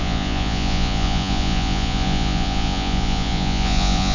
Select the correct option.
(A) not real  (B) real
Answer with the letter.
A